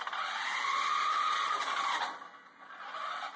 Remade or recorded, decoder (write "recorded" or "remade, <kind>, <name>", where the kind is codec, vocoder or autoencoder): recorded